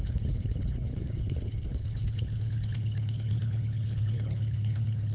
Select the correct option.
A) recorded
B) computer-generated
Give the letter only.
B